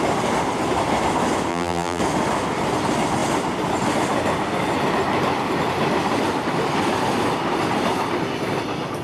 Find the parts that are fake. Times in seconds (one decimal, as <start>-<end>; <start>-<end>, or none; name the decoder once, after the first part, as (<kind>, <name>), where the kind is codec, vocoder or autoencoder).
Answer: 1.5-2.0 (vocoder, BigVGAN v2)